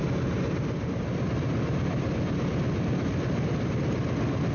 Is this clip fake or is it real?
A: real